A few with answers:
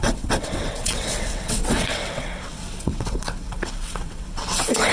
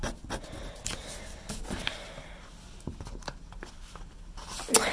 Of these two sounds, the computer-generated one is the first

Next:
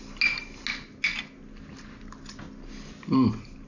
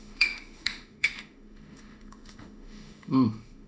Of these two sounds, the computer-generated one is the second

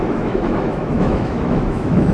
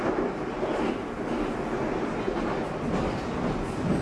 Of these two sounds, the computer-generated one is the first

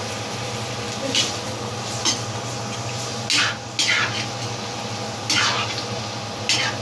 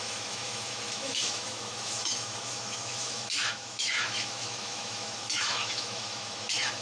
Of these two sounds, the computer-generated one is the second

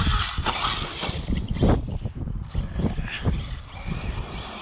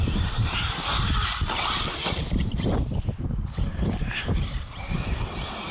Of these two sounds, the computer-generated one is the second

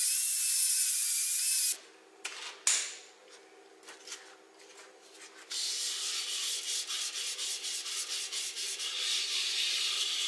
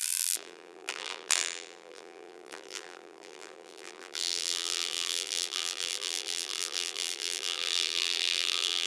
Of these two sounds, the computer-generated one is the second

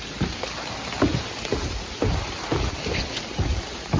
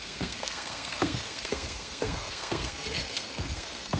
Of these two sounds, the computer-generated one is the second